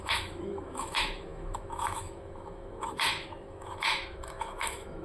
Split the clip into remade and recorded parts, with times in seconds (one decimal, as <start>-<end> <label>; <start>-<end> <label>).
0.0-5.0 remade